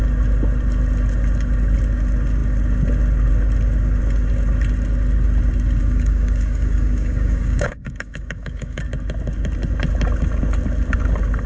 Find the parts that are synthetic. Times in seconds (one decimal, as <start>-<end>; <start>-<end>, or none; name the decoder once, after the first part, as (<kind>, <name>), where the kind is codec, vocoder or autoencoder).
5.8-8.8 (codec, DAC)